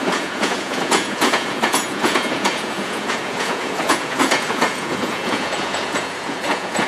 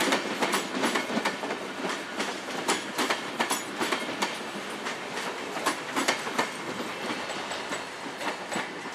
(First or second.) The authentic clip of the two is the second